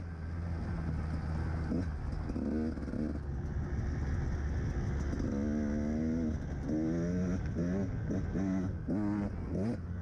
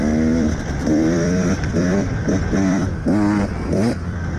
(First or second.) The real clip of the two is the first